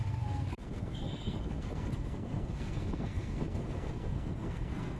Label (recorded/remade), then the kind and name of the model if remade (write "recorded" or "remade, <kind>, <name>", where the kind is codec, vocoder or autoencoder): remade, codec, SNAC